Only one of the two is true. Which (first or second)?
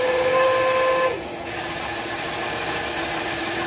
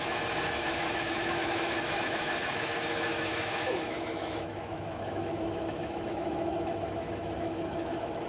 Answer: first